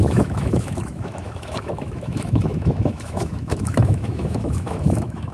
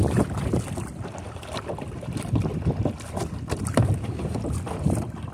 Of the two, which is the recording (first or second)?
second